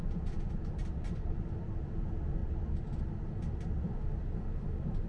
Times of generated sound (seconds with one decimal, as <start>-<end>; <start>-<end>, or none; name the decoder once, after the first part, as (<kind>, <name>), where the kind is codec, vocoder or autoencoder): none